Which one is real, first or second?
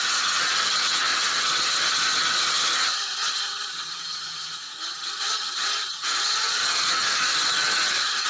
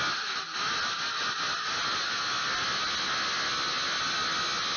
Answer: second